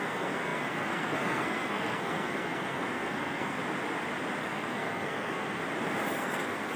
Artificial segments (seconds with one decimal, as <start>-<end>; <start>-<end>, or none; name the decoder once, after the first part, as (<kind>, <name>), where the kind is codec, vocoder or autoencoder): 0.0-3.6 (codec, SNAC); 4.4-5.6; 6.1-6.8